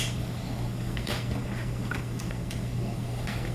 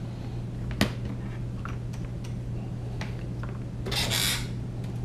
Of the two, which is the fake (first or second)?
first